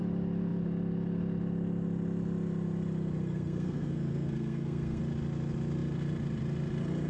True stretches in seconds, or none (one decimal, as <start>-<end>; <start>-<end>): 0.0-3.2; 5.0-7.1